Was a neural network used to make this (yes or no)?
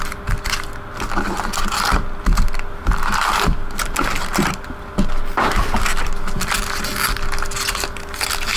no